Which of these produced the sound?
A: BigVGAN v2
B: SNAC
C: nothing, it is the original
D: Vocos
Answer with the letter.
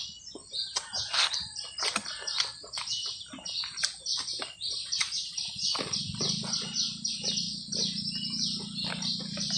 C